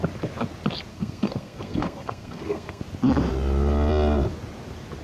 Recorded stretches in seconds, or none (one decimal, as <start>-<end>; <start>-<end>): 0.0-0.9; 2.8-5.0